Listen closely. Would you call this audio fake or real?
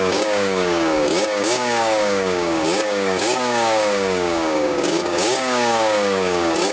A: fake